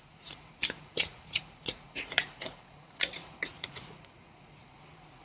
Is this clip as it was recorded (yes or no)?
no